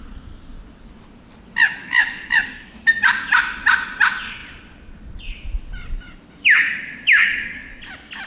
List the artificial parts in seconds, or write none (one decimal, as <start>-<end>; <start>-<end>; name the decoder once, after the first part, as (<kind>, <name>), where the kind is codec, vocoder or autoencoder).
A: 1.8-2.7 (codec, DAC); 7.2-7.7